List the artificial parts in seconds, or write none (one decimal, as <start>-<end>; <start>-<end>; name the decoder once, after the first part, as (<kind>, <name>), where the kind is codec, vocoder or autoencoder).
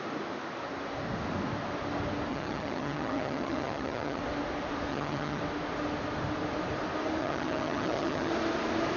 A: 2.3-4.2 (vocoder, HiFi-GAN); 4.9-5.4; 7.2-8.3